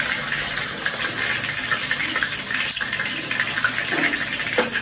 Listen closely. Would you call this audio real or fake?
real